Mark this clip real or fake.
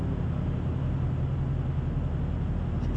real